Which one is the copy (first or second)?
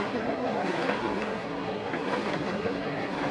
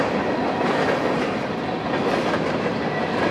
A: first